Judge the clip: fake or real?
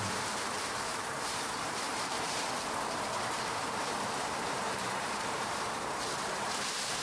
fake